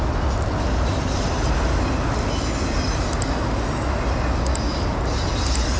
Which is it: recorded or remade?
recorded